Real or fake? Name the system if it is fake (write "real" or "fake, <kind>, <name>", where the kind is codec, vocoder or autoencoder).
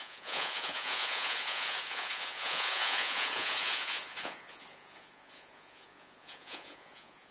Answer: fake, vocoder, Vocos